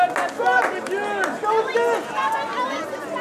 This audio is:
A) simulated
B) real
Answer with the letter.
B